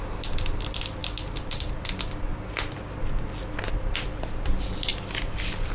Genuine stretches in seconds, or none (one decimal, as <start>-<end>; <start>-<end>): 0.0-5.7